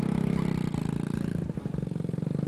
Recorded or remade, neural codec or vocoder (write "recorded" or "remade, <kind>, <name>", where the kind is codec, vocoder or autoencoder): recorded